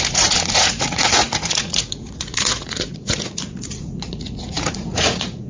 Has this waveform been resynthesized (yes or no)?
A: yes